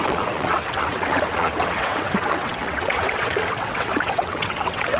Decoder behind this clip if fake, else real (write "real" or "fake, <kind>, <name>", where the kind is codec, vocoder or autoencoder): fake, vocoder, WaveNeXt